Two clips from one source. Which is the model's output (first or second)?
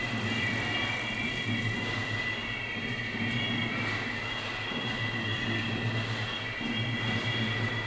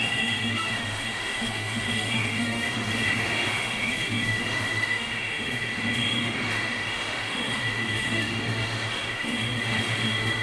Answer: second